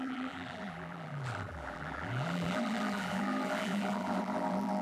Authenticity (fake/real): fake